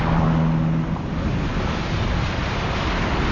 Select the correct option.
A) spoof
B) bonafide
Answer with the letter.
B